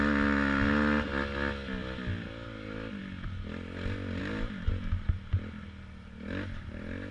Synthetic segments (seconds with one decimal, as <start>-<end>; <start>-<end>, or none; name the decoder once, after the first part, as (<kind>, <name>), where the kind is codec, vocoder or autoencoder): none